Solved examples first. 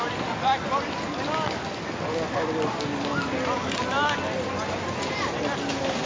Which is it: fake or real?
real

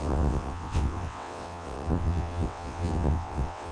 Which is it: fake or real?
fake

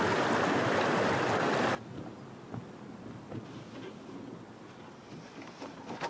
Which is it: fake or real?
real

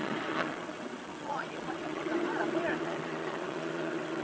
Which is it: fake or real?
fake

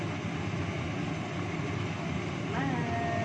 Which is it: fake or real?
real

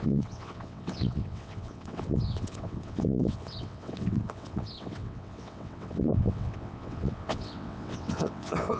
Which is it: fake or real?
fake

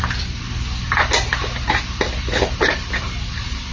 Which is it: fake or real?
real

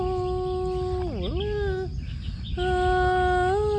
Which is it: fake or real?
real